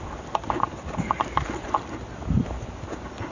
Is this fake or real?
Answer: real